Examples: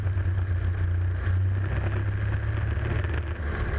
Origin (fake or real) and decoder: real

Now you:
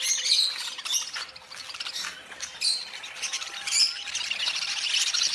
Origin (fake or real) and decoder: real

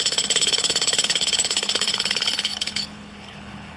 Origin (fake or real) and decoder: fake, codec, HILCodec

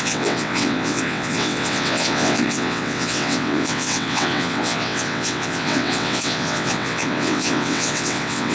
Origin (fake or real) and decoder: fake, vocoder, WaveNeXt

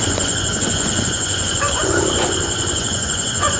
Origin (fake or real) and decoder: fake, vocoder, Vocos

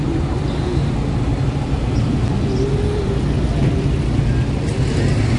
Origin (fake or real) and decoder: real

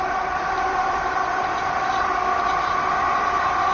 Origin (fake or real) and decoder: real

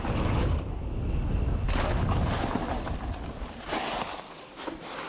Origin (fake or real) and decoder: real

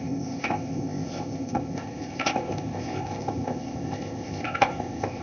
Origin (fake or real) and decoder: fake, codec, ZipCodec